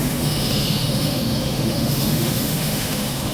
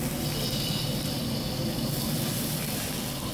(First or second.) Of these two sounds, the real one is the second